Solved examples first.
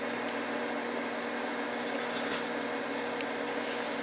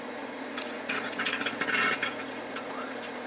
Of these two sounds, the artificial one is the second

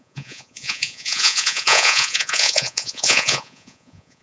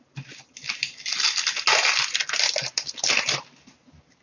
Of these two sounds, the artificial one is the first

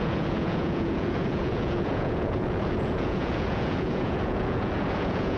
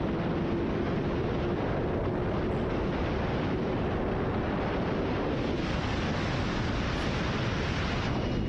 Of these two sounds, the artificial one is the first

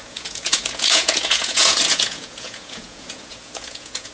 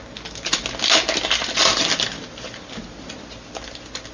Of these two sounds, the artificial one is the first